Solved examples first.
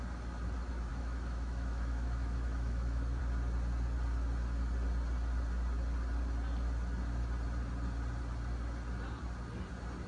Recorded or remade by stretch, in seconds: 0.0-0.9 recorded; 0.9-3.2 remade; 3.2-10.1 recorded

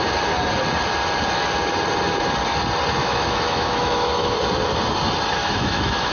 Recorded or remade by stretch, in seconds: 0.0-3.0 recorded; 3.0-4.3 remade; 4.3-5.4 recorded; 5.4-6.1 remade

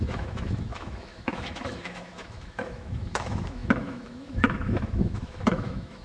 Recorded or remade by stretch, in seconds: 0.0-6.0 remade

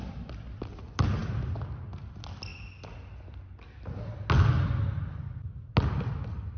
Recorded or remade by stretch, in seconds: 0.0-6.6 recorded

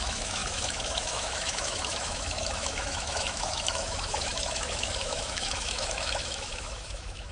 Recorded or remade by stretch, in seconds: 0.0-7.3 remade